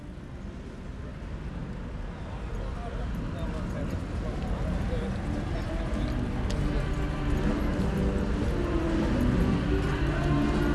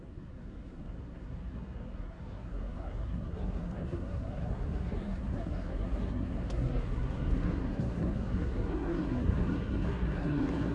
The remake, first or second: second